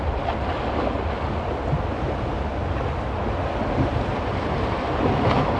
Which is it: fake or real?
real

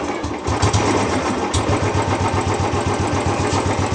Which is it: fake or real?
real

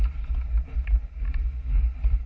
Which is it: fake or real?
real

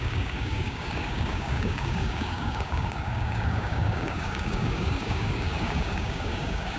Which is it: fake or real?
fake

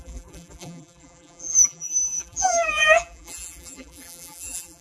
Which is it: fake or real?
fake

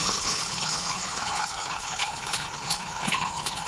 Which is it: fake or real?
fake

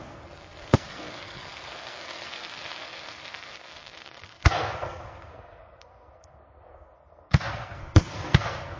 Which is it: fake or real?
fake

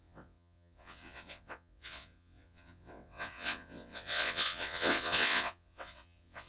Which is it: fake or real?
fake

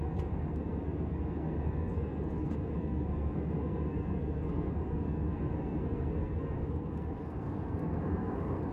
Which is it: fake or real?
fake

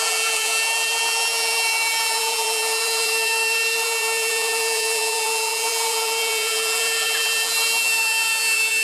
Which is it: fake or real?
fake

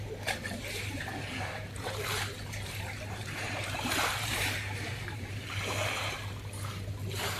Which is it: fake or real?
fake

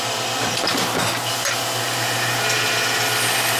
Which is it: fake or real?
real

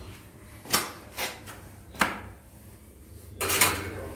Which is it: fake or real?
fake